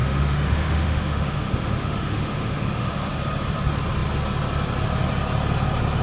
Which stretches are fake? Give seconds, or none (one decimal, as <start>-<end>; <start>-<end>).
0.0-3.1